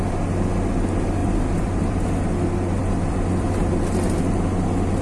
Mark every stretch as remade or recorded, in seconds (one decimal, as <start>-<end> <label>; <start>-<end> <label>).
0.0-1.2 recorded; 1.2-2.1 remade; 2.1-2.8 recorded; 2.8-3.8 remade; 3.8-5.0 recorded